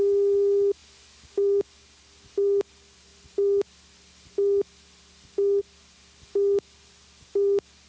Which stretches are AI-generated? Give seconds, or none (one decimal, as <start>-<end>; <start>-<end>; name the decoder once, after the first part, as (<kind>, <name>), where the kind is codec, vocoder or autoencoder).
none